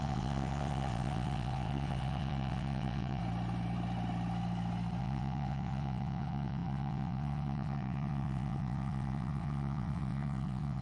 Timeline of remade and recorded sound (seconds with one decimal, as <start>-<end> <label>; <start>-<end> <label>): 0.0-3.2 remade; 3.2-5.0 recorded; 5.0-10.8 remade